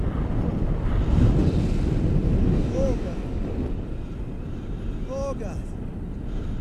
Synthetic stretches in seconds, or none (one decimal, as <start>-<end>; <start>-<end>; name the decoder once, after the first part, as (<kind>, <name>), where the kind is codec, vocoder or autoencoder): 2.4-3.4 (codec, DAC)